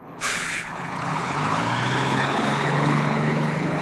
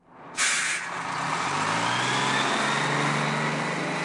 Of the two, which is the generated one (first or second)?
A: first